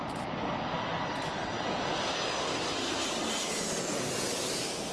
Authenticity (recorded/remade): recorded